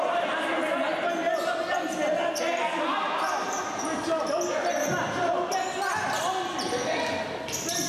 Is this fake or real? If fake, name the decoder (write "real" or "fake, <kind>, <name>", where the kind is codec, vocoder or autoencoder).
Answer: real